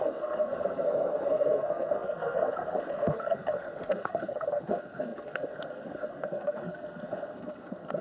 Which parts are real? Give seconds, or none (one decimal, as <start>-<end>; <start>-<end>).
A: none

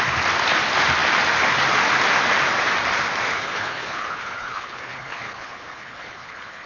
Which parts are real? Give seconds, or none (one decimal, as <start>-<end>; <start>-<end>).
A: 0.0-3.3

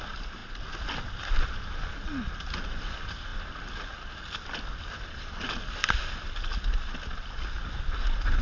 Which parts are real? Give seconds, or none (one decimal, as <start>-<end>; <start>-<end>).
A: 0.0-8.4

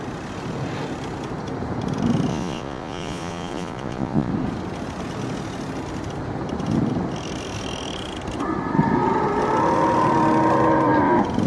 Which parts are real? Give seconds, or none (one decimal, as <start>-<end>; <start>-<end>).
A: 0.0-2.3; 4.3-11.5

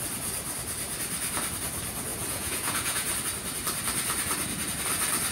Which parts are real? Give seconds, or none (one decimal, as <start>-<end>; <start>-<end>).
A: 0.0-2.1; 3.1-5.3

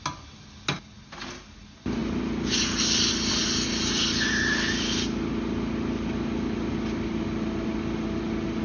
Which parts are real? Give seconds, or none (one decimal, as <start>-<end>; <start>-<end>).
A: 0.0-8.6